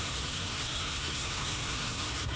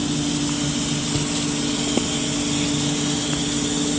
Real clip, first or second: second